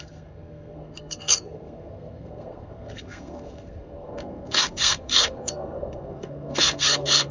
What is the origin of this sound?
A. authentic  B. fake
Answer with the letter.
B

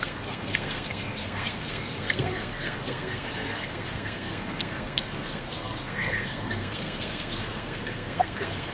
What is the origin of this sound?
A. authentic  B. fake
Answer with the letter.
B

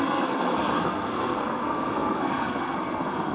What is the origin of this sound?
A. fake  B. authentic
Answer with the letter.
A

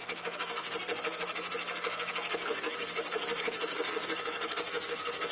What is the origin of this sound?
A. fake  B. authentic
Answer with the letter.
A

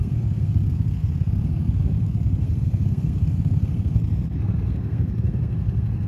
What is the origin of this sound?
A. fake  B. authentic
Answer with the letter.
A